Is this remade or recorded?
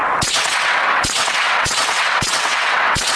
remade